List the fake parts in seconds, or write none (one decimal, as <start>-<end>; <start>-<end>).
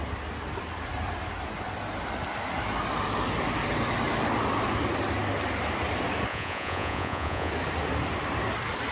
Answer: 6.3-7.5